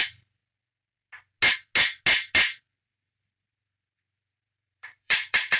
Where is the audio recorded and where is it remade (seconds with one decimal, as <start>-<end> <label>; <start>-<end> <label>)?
0.0-0.4 remade; 0.4-2.8 recorded; 2.8-5.6 remade